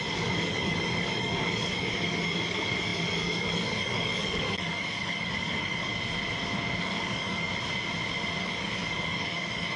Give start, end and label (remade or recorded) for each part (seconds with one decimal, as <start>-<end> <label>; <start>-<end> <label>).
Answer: 0.0-5.9 remade; 5.9-6.8 recorded; 6.8-7.5 remade; 7.5-8.4 recorded; 8.4-9.8 remade

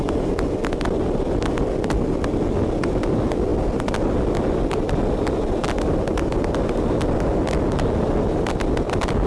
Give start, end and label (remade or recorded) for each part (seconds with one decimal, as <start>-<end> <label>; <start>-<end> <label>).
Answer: 0.0-9.3 recorded

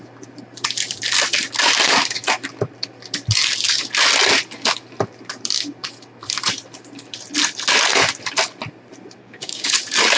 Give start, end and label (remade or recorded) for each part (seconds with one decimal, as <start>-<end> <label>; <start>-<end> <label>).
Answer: 0.0-9.2 recorded; 9.2-9.7 remade; 9.7-10.2 recorded

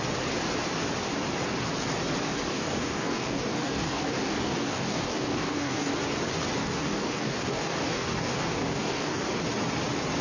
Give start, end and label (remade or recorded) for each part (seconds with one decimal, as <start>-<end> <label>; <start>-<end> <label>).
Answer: 0.0-2.5 recorded; 2.5-5.9 remade; 5.9-6.6 recorded; 6.6-9.3 remade; 9.3-10.2 recorded